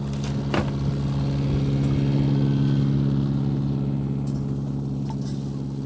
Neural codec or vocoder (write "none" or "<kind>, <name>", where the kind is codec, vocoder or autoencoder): none